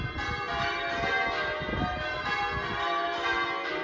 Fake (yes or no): no